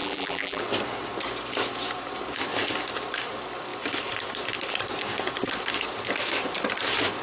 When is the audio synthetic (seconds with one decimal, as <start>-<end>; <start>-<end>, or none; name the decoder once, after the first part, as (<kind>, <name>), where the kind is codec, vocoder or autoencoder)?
0.0-0.6 (vocoder, BigVGAN v2)